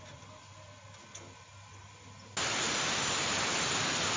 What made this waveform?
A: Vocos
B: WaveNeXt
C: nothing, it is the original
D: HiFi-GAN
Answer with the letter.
C